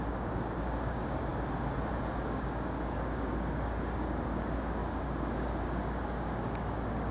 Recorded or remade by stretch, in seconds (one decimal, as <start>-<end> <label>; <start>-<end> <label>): 0.0-1.3 remade; 1.3-1.9 recorded; 1.9-7.1 remade